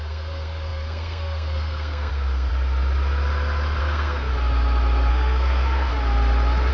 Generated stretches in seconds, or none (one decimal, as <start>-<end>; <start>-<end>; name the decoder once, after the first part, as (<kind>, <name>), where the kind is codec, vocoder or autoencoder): 0.0-2.5 (codec, SNAC); 3.8-4.3; 5.1-5.9